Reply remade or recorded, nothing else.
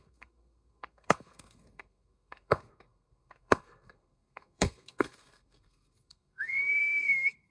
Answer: remade